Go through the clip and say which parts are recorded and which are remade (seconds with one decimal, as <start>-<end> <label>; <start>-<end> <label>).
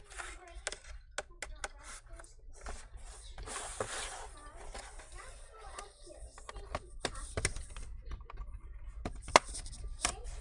0.0-10.4 recorded